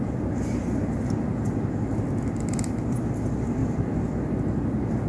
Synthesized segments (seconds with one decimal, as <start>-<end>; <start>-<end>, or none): none